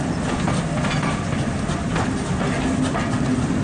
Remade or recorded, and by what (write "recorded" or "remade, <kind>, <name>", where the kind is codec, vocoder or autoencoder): recorded